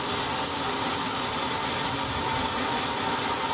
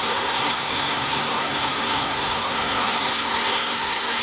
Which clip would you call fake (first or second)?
second